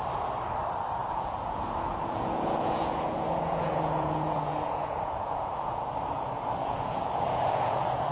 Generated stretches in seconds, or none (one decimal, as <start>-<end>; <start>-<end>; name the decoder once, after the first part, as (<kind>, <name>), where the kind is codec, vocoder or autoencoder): 1.0-5.9 (vocoder, Vocos); 6.6-8.1